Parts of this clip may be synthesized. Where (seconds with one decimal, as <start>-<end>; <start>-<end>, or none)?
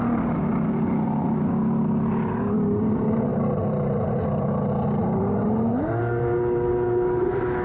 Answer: none